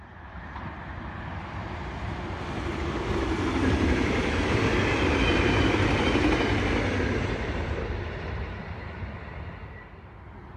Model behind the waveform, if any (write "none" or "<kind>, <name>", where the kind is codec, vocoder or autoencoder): none